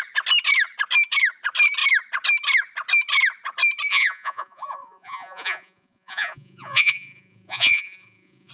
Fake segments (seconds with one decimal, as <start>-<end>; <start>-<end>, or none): 3.9-8.5